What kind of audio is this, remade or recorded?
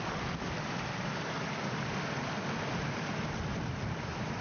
recorded